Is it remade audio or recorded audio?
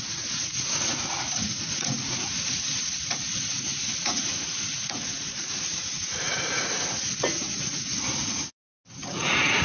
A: remade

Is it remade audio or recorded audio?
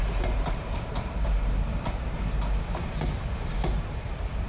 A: remade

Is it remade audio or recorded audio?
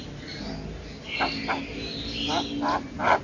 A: recorded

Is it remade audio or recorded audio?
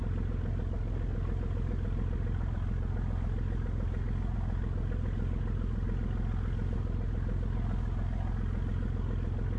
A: recorded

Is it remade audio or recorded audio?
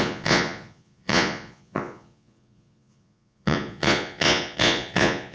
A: remade